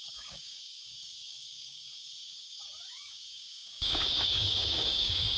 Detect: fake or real fake